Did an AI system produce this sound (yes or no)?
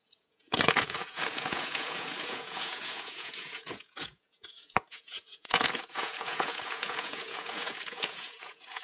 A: yes